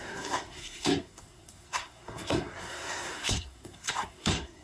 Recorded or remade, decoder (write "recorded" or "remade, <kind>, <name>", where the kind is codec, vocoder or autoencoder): remade, codec, SNAC